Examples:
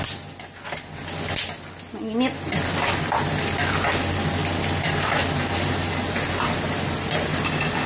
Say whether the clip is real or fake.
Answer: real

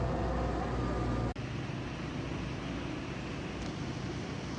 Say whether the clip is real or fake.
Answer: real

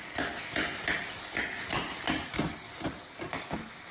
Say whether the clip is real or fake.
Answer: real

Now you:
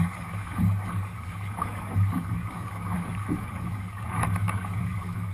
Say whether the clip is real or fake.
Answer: fake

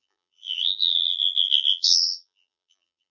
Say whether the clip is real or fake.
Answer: fake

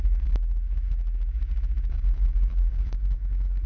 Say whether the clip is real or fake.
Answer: fake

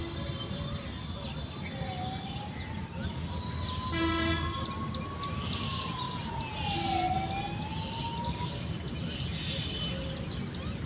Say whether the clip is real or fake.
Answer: real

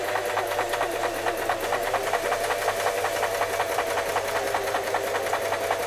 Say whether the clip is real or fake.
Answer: real